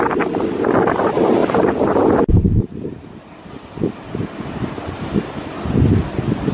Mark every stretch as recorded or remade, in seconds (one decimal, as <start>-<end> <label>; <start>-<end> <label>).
0.0-6.5 remade